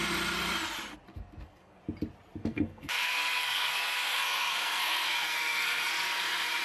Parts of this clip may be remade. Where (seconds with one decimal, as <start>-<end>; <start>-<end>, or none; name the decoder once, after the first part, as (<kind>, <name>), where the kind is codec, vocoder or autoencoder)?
1.1-1.8 (codec, SNAC); 2.4-6.6